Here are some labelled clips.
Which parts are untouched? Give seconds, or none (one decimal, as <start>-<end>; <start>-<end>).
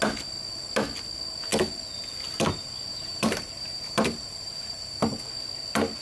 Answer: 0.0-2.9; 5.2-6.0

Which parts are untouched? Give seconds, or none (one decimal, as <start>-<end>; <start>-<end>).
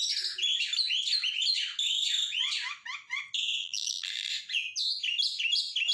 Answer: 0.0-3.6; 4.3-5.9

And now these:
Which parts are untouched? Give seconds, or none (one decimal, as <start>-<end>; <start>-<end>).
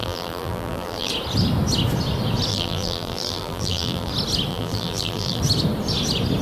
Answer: 1.1-2.5; 4.1-4.5; 5.4-6.4